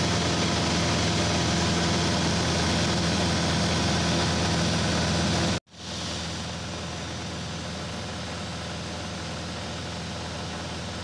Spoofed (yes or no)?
no